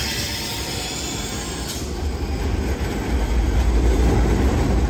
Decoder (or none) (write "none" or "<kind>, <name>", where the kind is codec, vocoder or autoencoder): none